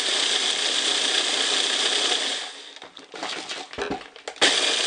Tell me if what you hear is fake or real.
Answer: real